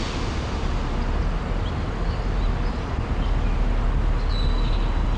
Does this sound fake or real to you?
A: real